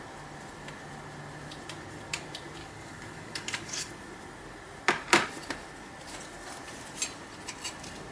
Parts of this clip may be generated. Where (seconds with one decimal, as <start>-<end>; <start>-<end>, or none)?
2.6-3.9